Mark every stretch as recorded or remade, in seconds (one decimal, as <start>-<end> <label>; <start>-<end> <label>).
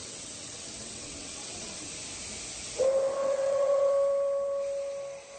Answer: 0.0-1.9 remade; 1.9-3.2 recorded; 3.2-3.9 remade; 3.9-5.4 recorded